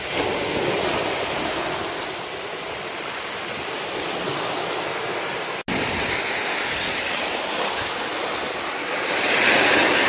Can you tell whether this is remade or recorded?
recorded